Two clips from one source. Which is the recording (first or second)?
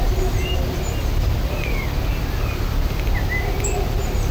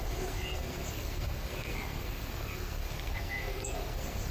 first